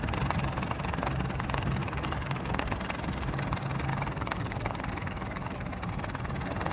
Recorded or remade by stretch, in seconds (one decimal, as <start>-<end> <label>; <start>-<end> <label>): 0.0-1.8 recorded; 1.8-2.6 remade; 2.6-3.9 recorded; 3.9-5.7 remade; 5.7-6.7 recorded